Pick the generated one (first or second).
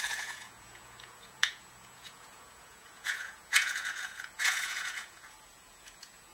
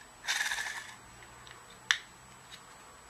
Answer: first